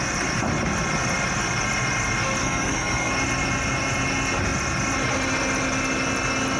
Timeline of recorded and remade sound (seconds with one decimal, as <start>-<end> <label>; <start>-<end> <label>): 0.0-2.4 recorded; 2.4-3.1 remade; 3.1-6.6 recorded